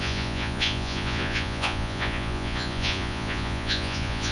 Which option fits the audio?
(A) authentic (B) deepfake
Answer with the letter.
B